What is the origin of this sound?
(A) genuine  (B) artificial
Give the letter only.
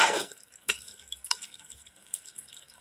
B